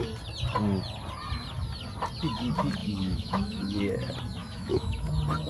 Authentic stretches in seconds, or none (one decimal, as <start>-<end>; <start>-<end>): 0.0-2.8; 3.9-4.4; 5.1-5.5